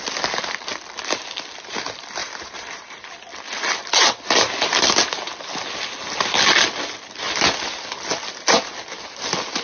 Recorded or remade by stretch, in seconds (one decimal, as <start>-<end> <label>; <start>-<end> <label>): 0.0-2.2 recorded; 2.2-3.1 remade; 3.1-9.6 recorded